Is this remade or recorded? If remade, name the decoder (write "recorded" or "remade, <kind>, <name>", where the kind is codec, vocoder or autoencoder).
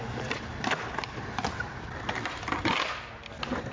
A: recorded